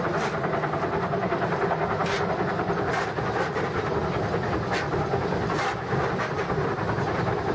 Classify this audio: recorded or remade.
recorded